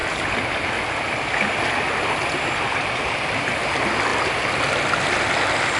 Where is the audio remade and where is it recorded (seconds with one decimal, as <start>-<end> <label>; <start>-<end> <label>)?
0.0-5.8 recorded

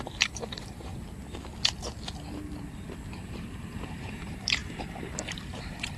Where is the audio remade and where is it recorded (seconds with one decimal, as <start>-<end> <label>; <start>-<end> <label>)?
0.0-0.9 remade; 0.9-3.9 recorded; 3.9-6.0 remade

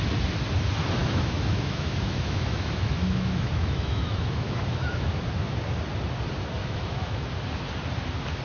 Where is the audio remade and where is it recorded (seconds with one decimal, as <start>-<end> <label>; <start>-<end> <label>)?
0.0-1.0 recorded; 1.0-5.2 remade; 5.2-6.6 recorded; 6.6-7.3 remade; 7.3-8.4 recorded